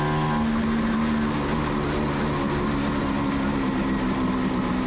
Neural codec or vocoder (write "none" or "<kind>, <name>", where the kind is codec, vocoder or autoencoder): none